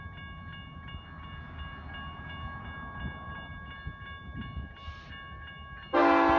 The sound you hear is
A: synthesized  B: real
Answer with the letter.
B